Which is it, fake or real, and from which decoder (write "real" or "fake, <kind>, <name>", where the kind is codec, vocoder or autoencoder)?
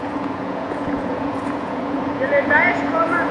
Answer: fake, vocoder, Vocos